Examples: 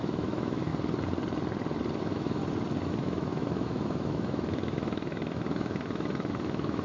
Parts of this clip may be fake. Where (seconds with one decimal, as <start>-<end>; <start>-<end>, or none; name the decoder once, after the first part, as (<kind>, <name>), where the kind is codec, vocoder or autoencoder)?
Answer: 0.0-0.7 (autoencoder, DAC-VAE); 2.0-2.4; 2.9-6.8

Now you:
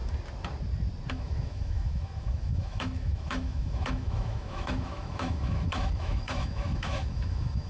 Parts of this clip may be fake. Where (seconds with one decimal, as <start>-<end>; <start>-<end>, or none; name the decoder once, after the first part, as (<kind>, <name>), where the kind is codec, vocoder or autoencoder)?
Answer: 1.1-7.7 (autoencoder, DAC-VAE)

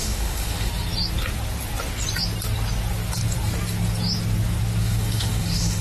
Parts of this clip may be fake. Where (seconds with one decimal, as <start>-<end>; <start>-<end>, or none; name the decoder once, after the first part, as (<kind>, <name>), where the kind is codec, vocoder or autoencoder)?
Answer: 0.0-0.7 (autoencoder, DAC-VAE); 4.8-5.8